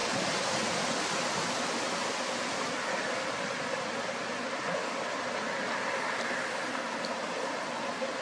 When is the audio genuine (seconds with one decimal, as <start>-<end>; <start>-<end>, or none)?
0.0-8.2